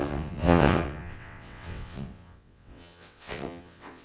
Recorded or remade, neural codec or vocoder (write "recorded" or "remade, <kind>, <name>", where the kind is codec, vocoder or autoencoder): remade, vocoder, WaveNeXt